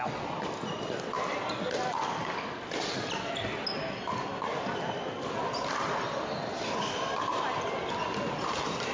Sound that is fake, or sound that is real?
real